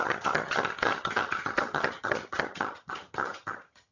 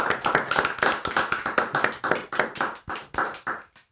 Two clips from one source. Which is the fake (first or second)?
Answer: first